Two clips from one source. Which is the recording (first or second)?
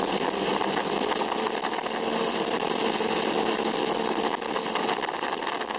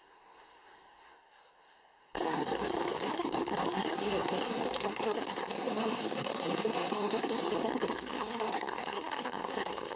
first